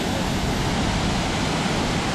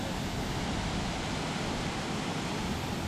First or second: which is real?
first